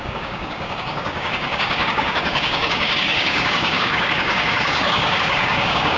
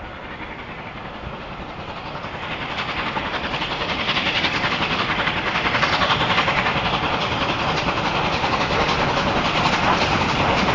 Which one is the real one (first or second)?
second